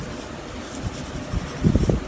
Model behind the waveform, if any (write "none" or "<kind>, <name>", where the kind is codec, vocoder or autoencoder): none